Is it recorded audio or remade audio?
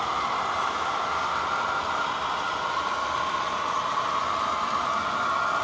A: recorded